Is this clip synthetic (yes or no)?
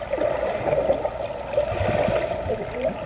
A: no